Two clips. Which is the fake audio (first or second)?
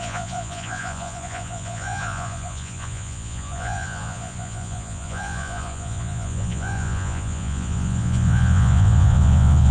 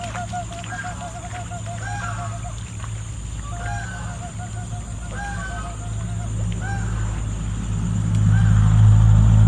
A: first